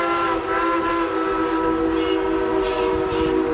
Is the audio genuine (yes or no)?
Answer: yes